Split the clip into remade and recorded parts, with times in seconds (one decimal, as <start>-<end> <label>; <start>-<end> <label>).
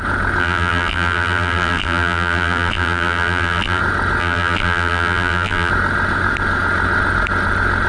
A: 0.0-0.4 recorded; 0.4-3.8 remade; 3.8-4.2 recorded; 4.2-5.7 remade; 5.7-7.9 recorded